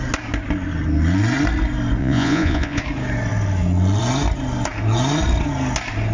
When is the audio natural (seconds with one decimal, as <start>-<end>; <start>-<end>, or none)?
0.0-2.0; 2.8-6.1